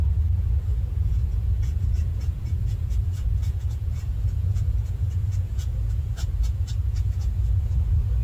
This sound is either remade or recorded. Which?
remade